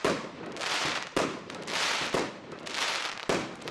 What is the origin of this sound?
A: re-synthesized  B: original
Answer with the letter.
A